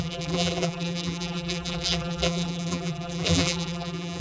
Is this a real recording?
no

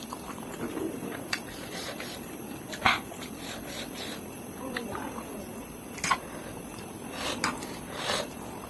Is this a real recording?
yes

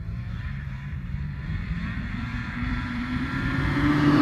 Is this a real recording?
no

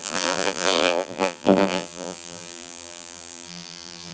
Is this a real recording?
no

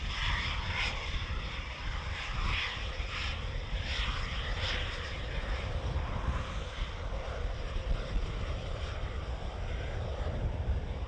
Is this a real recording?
no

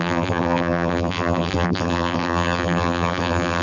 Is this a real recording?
no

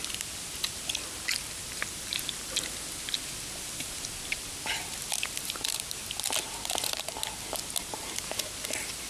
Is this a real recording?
yes